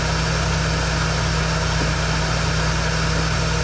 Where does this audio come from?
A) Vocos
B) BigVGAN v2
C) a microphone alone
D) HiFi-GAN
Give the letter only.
C